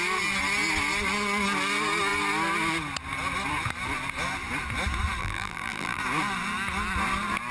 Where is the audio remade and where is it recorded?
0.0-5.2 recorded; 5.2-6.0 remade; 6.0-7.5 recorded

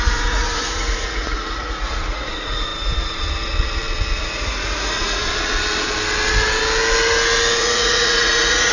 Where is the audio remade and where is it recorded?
0.0-2.7 remade; 2.7-4.2 recorded; 4.2-5.2 remade; 5.2-7.6 recorded; 7.6-8.7 remade

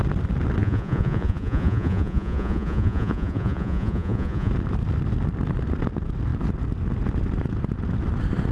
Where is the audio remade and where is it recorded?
0.0-0.6 recorded; 0.6-4.5 remade; 4.5-8.5 recorded

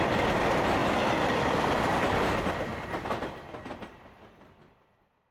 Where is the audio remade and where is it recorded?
0.0-0.8 recorded; 0.8-1.9 remade; 1.9-5.3 recorded

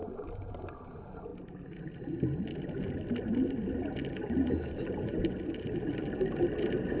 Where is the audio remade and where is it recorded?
0.0-7.0 recorded